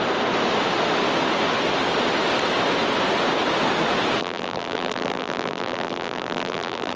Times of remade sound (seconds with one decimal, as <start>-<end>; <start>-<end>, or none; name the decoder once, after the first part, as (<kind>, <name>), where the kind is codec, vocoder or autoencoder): 4.2-7.0 (vocoder, BigVGAN v2)